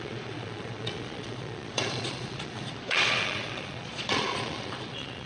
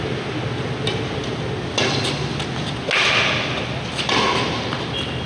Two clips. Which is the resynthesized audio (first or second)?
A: first